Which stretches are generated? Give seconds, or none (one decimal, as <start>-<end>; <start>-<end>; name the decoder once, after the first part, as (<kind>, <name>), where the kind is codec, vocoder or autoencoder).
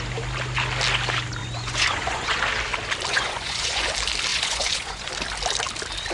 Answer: 1.4-2.4 (vocoder, Vocos); 3.1-3.9; 4.3-5.1